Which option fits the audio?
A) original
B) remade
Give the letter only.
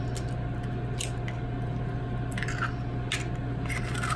A